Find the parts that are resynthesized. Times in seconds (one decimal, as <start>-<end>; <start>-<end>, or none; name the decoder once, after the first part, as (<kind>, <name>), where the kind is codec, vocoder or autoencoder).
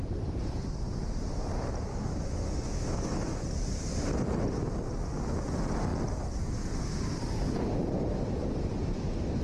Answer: 1.9-3.4 (autoencoder, DAC-VAE)